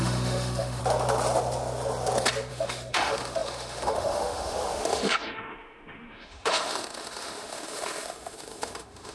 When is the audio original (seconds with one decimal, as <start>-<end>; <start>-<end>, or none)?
0.8-2.5